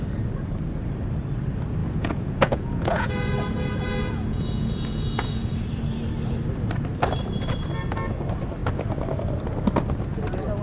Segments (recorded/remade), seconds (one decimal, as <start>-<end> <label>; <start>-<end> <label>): 0.0-1.8 recorded; 1.8-5.6 remade; 5.6-10.6 recorded